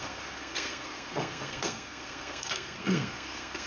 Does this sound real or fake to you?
fake